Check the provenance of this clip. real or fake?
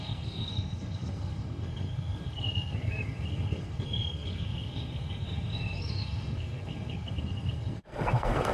fake